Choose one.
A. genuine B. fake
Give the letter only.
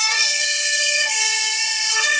B